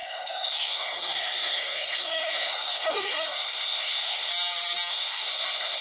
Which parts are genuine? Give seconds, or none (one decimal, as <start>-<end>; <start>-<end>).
4.3-4.9